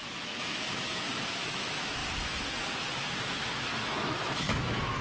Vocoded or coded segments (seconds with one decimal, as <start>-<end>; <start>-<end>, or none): 0.0-2.0; 3.0-5.0